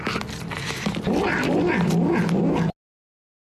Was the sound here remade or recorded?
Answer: recorded